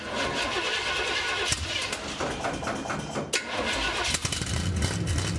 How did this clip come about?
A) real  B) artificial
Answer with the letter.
A